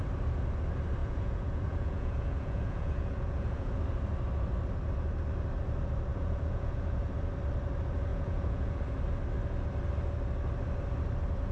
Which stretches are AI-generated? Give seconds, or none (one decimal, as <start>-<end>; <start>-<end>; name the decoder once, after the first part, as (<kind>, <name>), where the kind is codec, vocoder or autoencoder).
1.0-3.8 (vocoder, Vocos); 6.1-7.1; 8.1-8.8